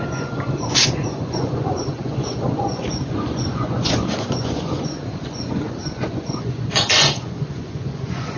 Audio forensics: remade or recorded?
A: remade